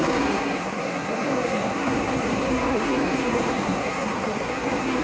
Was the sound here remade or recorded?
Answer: remade